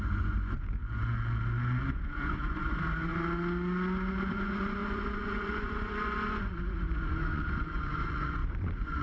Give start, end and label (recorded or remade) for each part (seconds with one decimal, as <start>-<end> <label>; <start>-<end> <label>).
0.0-0.8 remade; 0.8-1.9 recorded; 1.9-3.1 remade; 3.1-4.3 recorded; 4.3-9.0 remade